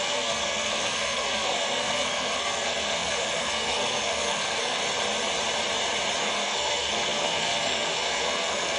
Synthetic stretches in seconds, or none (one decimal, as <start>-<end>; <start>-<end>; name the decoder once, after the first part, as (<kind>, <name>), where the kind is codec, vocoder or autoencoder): 0.0-4.8 (codec, SNAC); 6.2-8.8